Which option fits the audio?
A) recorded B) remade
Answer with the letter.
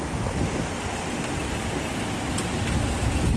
A